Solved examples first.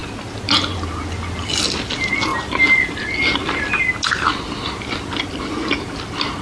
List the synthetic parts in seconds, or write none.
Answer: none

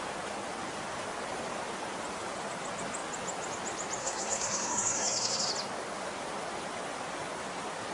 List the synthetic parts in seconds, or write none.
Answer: 4.0-5.5 (codec, SNAC)

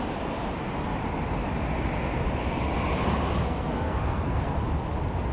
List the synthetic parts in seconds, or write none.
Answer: 3.4-4.5 (codec, SNAC)